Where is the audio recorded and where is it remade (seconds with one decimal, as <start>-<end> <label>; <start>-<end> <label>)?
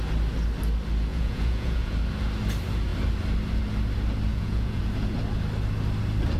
0.0-1.1 recorded; 1.1-1.9 remade; 1.9-4.3 recorded; 4.3-4.8 remade; 4.8-6.4 recorded